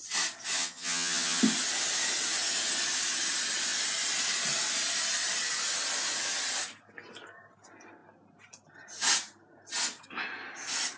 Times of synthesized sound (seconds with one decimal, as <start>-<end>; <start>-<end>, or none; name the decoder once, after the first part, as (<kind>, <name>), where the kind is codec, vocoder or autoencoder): 0.6-1.4 (vocoder, HiFi-GAN)